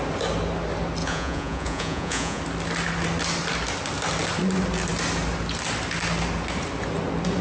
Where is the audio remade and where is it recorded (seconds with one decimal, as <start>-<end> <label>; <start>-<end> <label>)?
0.0-1.0 recorded; 1.0-2.4 remade; 2.4-7.4 recorded

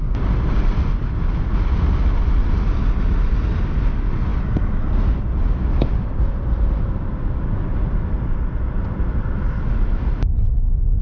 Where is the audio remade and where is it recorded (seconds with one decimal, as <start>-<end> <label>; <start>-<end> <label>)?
0.0-11.0 recorded

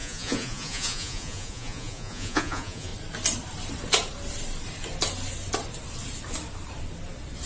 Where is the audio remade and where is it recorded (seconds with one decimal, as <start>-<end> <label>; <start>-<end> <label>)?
0.0-2.9 remade; 2.9-7.5 recorded

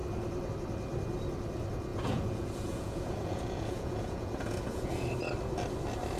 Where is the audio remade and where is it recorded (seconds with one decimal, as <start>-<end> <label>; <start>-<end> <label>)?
0.0-1.9 recorded; 1.9-4.9 remade; 4.9-6.2 recorded